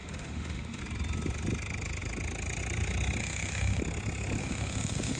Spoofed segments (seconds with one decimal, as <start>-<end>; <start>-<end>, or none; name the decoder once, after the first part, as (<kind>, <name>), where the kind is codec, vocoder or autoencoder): 0.0-0.8 (autoencoder, DAC-VAE); 3.2-3.8; 4.4-5.2